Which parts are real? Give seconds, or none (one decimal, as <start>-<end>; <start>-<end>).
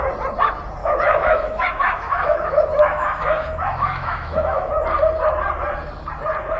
0.0-0.8; 4.7-6.6